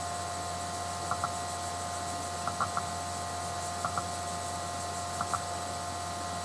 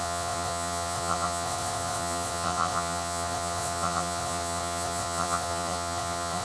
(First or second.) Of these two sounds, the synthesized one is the second